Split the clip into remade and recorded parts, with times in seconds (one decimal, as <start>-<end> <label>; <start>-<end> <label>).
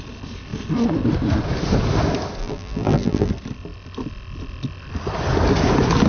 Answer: 0.0-2.4 recorded; 2.4-3.3 remade; 3.3-6.1 recorded